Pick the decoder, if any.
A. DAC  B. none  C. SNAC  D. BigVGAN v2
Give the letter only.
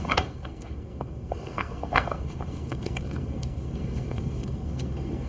C